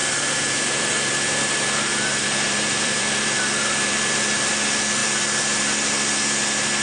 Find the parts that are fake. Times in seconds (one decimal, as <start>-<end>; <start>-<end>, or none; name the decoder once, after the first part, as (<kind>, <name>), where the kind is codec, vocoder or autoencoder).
0.0-4.1 (vocoder, BigVGAN v2); 5.0-5.6